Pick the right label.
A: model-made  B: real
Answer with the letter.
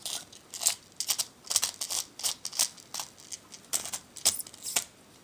B